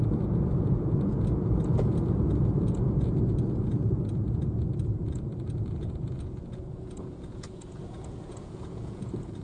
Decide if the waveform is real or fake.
fake